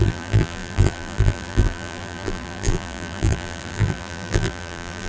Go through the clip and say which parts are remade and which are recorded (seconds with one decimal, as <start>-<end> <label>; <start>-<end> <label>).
0.0-5.1 remade